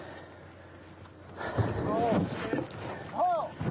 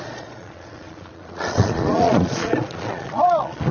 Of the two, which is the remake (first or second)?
second